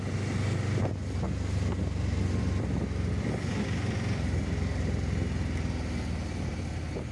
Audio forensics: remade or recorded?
recorded